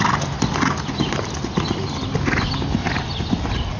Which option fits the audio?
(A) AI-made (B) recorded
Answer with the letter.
B